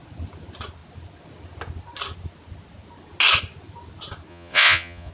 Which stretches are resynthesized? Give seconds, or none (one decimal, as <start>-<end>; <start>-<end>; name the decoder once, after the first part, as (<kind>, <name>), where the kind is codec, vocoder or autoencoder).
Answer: 4.3-5.1 (vocoder, Vocos)